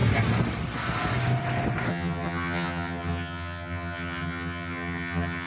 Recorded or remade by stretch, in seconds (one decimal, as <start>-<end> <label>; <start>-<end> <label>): 0.0-1.9 recorded; 1.9-5.5 remade